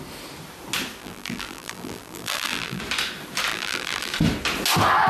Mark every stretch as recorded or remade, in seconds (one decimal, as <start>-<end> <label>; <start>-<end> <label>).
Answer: 0.0-1.0 recorded; 1.0-2.8 remade; 2.8-3.5 recorded; 3.5-4.1 remade; 4.1-5.1 recorded